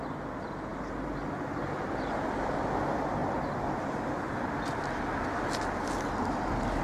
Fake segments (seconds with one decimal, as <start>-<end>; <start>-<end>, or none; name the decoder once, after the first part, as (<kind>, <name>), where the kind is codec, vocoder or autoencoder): none